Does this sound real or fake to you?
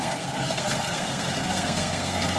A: fake